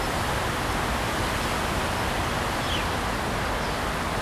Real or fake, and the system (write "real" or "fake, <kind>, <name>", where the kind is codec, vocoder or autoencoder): real